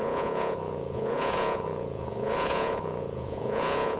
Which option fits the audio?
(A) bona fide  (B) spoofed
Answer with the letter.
B